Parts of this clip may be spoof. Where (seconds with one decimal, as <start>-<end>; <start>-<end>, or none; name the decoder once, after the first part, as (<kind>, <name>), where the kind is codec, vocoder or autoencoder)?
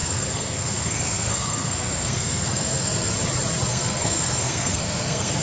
0.0-3.1 (codec, SNAC); 3.7-5.4